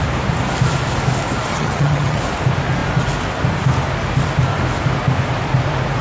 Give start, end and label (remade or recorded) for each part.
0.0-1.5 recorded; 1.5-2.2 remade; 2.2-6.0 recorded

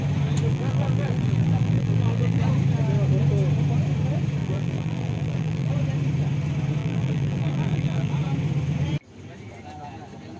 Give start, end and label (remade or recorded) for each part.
0.0-0.5 recorded; 0.5-2.4 remade; 2.4-4.4 recorded; 4.4-5.7 remade; 5.7-6.8 recorded; 6.8-8.1 remade; 8.1-10.4 recorded

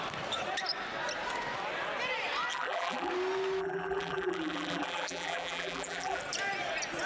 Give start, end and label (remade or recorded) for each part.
0.0-2.5 recorded; 2.5-3.1 remade; 3.1-3.6 recorded; 3.6-6.2 remade; 6.2-7.1 recorded

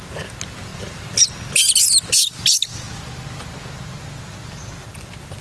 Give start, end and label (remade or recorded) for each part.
0.0-5.4 recorded

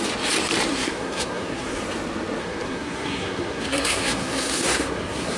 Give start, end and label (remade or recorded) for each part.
0.0-0.7 recorded; 0.7-1.8 remade; 1.8-2.4 recorded; 2.4-5.4 remade